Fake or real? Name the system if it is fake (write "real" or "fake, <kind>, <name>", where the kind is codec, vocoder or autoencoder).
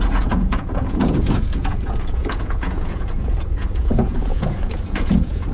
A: fake, vocoder, Vocos